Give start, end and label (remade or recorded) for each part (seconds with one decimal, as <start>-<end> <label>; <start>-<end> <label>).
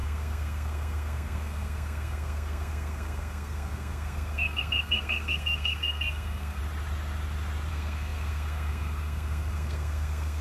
0.0-6.6 remade; 6.6-7.7 recorded; 7.7-10.4 remade